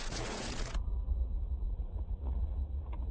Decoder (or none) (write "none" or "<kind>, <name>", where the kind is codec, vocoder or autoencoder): vocoder, Vocos